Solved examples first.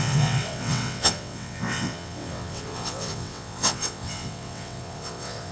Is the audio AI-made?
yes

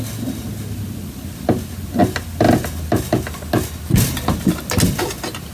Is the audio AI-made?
no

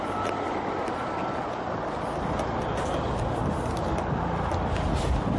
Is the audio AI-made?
no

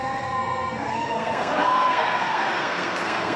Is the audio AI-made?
yes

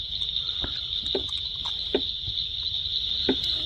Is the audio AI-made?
no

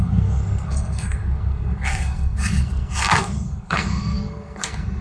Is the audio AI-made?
yes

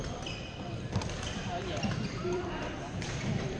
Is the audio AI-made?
yes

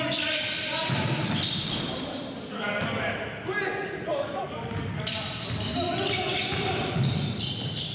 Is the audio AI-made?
no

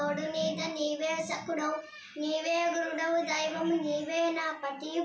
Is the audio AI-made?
no